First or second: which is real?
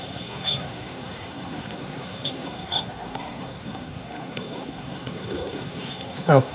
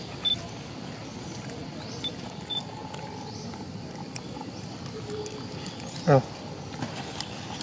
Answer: second